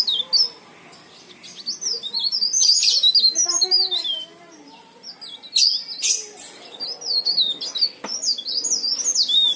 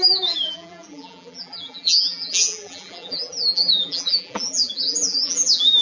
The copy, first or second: second